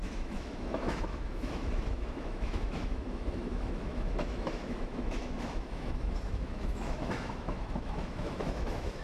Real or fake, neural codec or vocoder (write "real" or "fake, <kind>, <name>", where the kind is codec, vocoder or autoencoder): fake, autoencoder, DAC-VAE